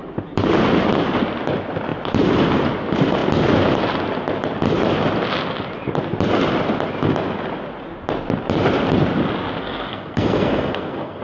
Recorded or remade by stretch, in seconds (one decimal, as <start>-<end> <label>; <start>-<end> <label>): 0.0-9.6 recorded; 9.6-11.2 remade